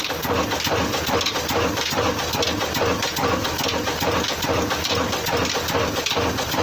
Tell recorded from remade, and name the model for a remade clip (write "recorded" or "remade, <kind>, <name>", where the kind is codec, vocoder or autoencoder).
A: recorded